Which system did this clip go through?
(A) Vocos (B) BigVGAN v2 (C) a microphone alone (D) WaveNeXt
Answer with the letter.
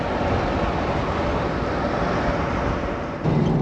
C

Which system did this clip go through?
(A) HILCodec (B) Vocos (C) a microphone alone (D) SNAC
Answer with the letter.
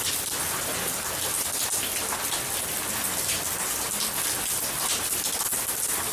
C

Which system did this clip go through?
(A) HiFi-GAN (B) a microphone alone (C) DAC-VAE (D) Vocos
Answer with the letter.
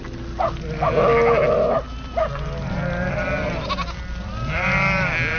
B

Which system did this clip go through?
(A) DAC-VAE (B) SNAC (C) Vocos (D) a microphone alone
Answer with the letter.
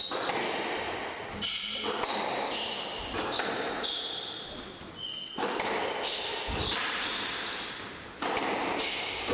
D